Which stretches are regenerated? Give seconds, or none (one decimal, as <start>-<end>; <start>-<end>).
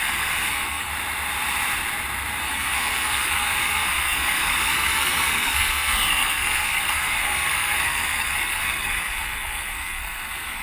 0.0-0.9; 2.4-10.6